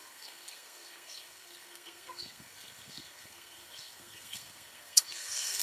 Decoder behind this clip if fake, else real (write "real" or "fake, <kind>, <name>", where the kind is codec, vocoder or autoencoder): fake, codec, SNAC